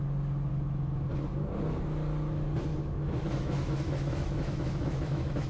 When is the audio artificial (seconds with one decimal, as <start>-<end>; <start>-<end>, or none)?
0.5-1.1; 2.7-5.5

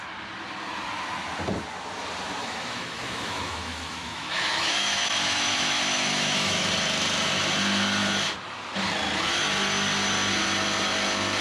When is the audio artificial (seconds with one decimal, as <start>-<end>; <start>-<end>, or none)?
2.4-6.7

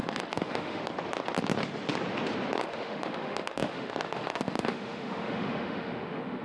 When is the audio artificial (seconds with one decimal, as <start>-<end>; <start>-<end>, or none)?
0.0-0.8; 2.6-6.4